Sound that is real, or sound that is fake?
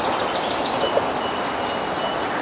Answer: real